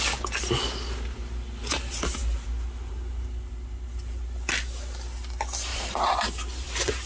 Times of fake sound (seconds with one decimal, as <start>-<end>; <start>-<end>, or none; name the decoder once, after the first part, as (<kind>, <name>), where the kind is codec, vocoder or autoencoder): 5.7-7.1 (vocoder, BigVGAN v2)